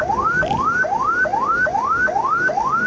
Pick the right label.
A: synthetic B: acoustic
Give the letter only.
B